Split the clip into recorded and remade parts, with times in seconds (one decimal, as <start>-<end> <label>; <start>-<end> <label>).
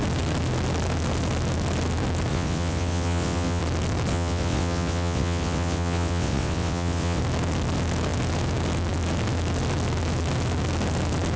0.0-2.3 recorded; 2.3-3.6 remade; 3.6-4.1 recorded; 4.1-7.2 remade; 7.2-11.4 recorded